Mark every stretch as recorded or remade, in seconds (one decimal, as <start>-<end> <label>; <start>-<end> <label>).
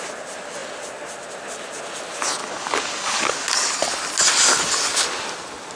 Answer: 0.0-2.4 recorded; 2.4-3.7 remade; 3.7-5.8 recorded